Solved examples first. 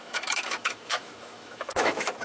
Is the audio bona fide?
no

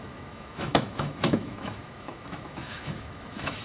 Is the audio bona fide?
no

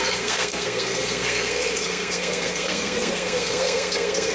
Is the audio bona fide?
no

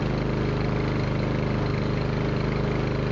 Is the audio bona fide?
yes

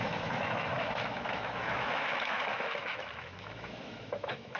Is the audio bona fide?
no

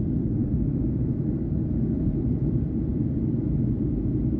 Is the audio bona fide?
no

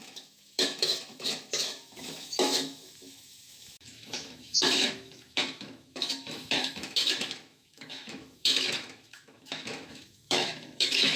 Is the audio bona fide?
no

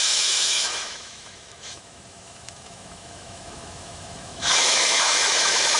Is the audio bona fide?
no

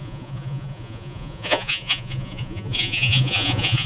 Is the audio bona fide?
no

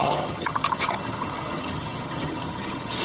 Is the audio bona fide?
no